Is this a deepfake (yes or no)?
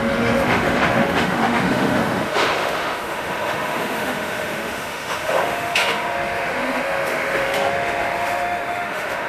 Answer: yes